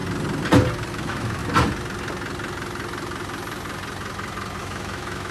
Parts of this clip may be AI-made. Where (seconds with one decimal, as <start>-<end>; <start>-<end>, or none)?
0.9-1.4; 4.6-5.3